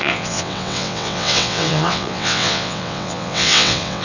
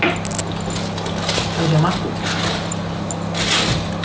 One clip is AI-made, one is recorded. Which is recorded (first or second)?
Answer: second